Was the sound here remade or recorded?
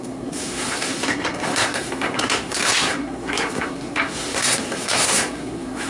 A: remade